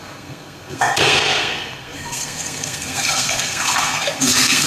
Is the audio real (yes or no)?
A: no